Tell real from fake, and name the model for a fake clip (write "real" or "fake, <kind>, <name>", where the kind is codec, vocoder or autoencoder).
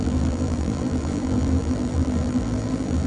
fake, vocoder, BigVGAN v2